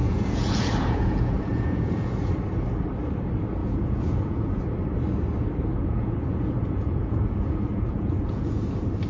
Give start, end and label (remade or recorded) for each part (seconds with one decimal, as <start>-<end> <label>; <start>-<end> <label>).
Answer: 0.0-2.3 remade; 2.3-3.6 recorded; 3.6-4.6 remade; 4.6-5.7 recorded; 5.7-8.6 remade; 8.6-9.1 recorded